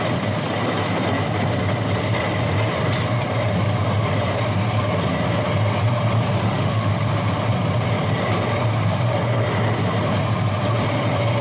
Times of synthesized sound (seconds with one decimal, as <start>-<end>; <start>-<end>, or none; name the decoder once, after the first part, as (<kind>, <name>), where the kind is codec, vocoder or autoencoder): 6.4-7.1 (autoencoder, DAC-VAE)